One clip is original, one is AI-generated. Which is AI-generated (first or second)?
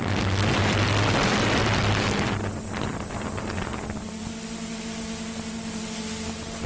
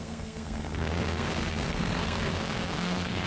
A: second